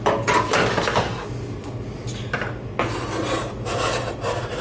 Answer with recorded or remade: recorded